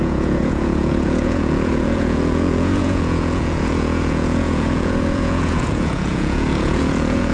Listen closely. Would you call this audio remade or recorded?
remade